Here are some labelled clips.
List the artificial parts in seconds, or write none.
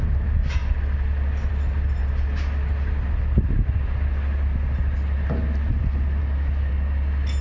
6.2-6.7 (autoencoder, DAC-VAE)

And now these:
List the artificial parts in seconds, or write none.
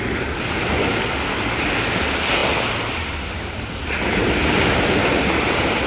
none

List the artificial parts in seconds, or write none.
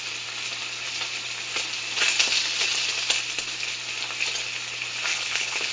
5.1-5.7 (codec, HILCodec)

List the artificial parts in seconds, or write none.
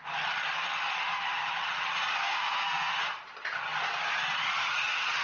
2.2-2.9 (codec, SNAC)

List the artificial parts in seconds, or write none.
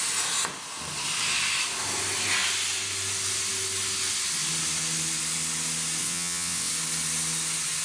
6.0-6.7 (vocoder, WaveNeXt)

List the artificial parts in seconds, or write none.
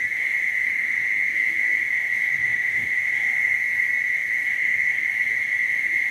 2.4-3.0 (autoencoder, DAC-VAE)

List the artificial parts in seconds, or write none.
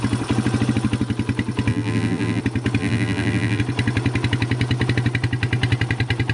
1.7-2.4 (vocoder, BigVGAN v2); 2.8-3.6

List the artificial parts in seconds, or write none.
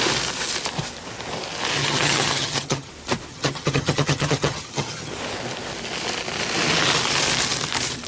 1.8-2.9 (vocoder, HiFi-GAN); 3.3-5.1